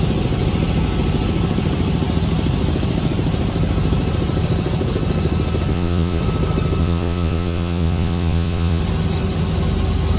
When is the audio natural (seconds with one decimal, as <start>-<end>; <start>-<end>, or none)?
0.0-5.7; 6.2-6.8; 8.8-10.2